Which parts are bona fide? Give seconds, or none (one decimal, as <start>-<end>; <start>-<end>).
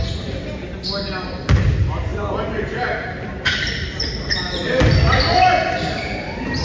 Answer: 0.0-6.6